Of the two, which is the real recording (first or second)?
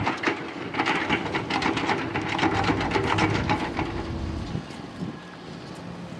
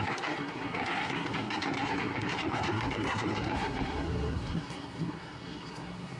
first